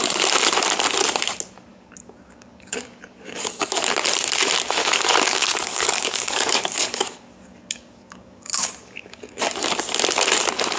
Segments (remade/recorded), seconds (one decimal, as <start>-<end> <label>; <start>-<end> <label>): 0.0-1.7 recorded; 1.7-3.8 remade; 3.8-4.8 recorded; 4.8-9.4 remade; 9.4-10.8 recorded